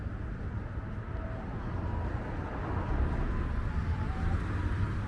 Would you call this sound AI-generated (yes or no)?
no